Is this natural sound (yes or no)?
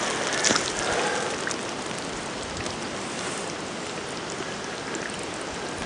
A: yes